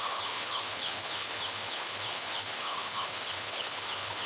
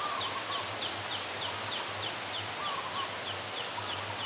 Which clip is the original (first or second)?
second